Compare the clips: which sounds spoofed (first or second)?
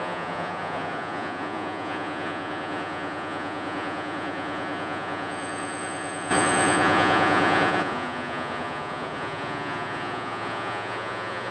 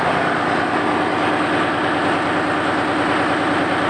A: first